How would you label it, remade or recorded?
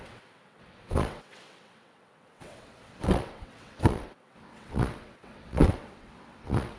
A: remade